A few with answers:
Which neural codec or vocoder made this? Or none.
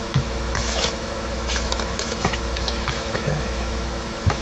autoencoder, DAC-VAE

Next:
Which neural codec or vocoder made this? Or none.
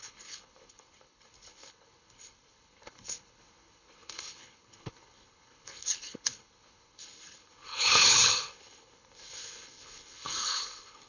codec, HILCodec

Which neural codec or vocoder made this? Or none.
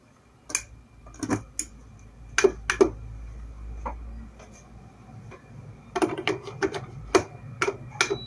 none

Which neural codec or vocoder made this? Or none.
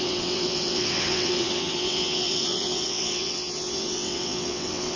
vocoder, WaveNeXt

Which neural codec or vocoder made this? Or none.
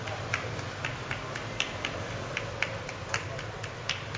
none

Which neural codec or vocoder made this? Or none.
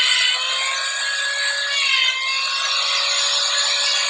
none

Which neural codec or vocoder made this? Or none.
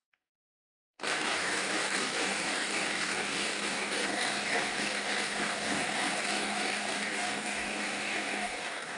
codec, DAC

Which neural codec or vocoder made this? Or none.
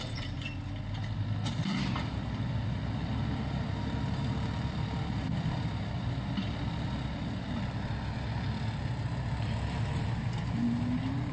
none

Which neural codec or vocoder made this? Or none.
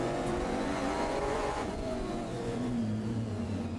vocoder, Vocos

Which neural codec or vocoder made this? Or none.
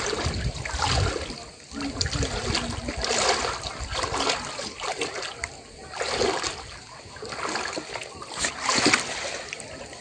none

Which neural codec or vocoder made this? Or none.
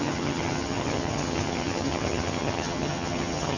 vocoder, HiFi-GAN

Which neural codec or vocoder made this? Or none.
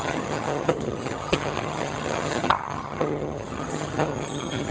vocoder, HiFi-GAN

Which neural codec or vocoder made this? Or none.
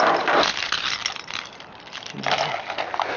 none